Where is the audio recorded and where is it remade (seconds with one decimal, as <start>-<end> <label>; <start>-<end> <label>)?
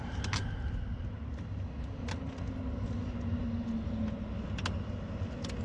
0.0-5.6 recorded